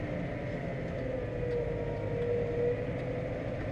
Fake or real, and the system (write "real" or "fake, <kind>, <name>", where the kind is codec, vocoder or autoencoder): real